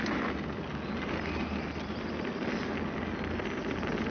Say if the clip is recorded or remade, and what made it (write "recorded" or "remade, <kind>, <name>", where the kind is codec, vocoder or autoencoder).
recorded